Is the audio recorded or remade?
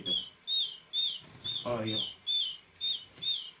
recorded